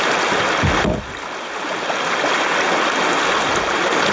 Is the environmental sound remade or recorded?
recorded